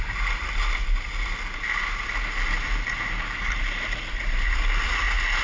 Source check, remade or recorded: recorded